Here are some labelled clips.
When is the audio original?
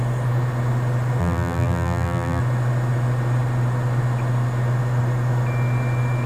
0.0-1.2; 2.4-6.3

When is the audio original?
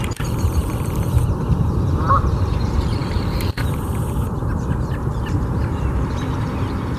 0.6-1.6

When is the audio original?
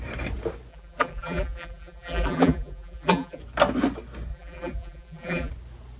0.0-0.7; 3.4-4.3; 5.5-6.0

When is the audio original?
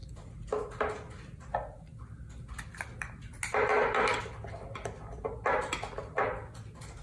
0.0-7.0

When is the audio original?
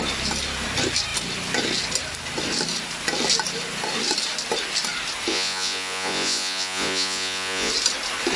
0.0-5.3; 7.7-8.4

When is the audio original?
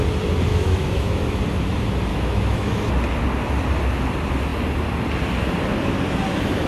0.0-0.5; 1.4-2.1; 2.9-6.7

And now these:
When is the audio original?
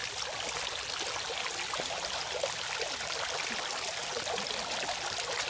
0.0-1.8; 2.2-5.5